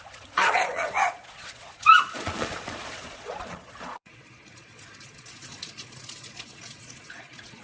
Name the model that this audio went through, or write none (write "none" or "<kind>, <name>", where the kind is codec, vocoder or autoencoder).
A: vocoder, Vocos